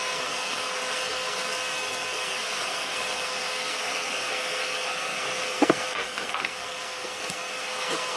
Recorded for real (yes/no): no